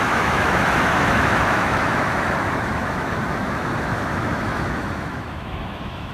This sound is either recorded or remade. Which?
remade